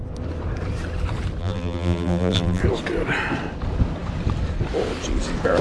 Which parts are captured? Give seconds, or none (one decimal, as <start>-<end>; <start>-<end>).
0.0-1.4; 2.6-5.6